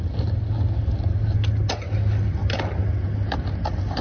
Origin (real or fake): real